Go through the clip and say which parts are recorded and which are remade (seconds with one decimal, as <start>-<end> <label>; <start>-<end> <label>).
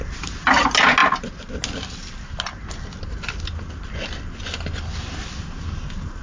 0.0-6.2 recorded